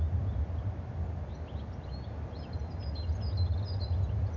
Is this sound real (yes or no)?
yes